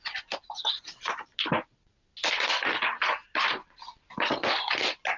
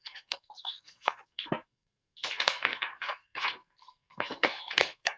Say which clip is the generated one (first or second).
second